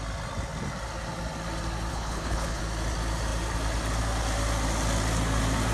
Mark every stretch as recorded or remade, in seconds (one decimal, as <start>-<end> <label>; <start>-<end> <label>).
0.0-1.9 recorded; 1.9-2.6 remade; 2.6-5.7 recorded